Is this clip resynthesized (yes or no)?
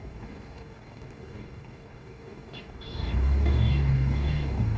yes